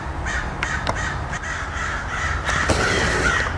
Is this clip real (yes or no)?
yes